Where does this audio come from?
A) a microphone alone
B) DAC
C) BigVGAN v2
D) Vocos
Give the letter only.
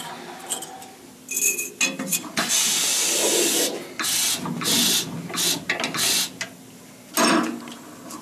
A